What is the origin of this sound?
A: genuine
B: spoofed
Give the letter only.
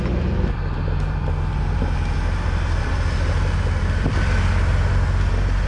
B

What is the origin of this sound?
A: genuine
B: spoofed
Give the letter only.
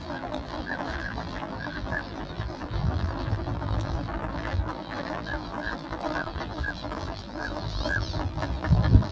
B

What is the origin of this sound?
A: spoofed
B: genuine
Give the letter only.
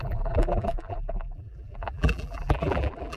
A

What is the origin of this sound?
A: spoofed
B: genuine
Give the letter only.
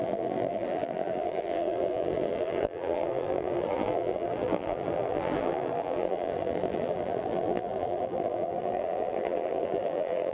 A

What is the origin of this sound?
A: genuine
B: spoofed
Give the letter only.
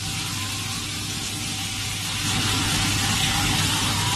A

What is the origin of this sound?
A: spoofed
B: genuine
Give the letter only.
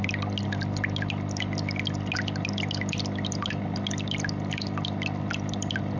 B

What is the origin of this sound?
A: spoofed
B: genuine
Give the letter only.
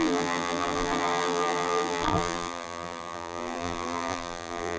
A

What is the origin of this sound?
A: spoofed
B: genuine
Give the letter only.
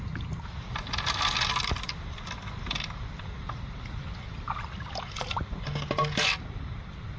B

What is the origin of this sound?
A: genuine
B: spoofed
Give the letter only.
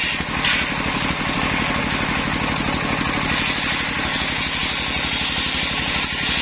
A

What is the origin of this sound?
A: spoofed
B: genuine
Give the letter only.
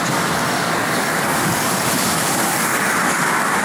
A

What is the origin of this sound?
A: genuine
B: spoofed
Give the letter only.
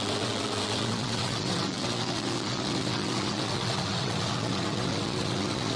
B